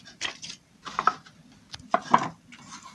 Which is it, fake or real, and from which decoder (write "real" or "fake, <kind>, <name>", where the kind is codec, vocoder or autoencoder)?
real